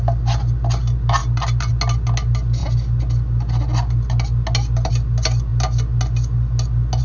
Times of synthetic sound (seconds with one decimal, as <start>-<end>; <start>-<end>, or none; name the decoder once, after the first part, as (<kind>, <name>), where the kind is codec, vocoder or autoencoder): none

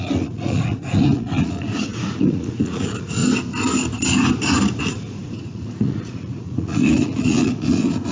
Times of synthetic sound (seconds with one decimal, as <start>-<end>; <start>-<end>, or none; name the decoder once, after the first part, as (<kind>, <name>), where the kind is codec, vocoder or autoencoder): 0.0-3.2 (vocoder, Vocos); 4.8-8.1

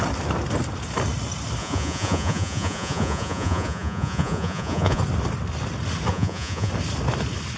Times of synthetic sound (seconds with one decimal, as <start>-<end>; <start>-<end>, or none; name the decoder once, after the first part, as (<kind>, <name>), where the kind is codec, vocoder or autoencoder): 1.6-5.0 (vocoder, Vocos); 6.1-6.7

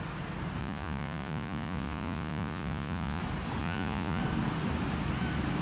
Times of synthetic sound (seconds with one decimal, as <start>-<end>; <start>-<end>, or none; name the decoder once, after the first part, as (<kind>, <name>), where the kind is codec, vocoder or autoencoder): 0.6-3.2 (vocoder, Vocos); 3.6-4.2

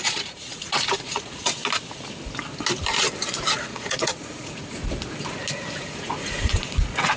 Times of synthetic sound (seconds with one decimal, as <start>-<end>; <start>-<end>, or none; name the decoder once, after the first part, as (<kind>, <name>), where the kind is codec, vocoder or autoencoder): 0.0-1.6 (vocoder, Vocos); 3.6-4.8; 5.8-7.2